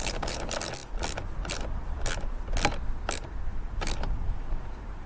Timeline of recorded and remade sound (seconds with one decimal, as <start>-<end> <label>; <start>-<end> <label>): 0.0-5.1 recorded